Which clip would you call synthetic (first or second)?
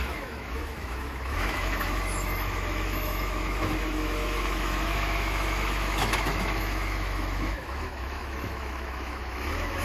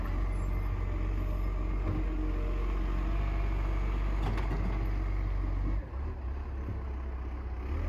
first